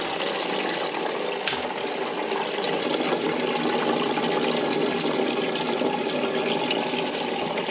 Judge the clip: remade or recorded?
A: recorded